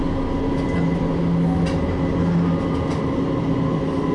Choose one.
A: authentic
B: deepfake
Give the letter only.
A